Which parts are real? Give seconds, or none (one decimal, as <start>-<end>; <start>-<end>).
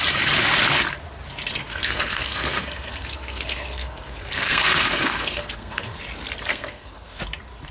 0.0-1.7; 6.0-6.5; 7.2-7.7